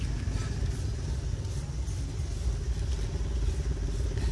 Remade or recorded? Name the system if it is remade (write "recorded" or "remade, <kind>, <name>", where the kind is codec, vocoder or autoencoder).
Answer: recorded